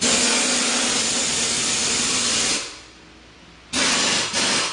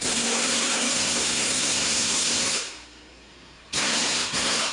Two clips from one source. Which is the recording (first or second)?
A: first